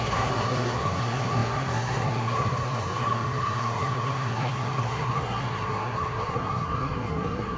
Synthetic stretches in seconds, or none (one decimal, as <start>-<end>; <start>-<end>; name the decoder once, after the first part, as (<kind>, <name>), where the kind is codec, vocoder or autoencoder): 0.0-7.6 (codec, SNAC)